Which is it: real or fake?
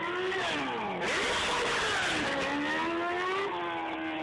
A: real